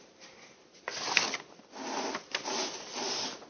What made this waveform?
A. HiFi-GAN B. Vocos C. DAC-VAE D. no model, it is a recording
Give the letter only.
D